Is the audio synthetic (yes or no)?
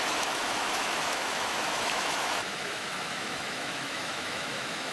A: yes